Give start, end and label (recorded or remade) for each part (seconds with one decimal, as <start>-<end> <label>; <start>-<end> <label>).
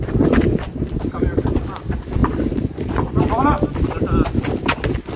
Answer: 0.0-2.2 recorded; 2.2-3.3 remade; 3.3-5.2 recorded